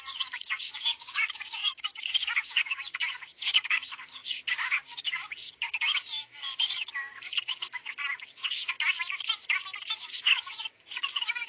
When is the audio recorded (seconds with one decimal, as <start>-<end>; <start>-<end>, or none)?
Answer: 8.0-9.8